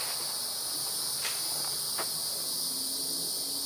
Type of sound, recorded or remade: recorded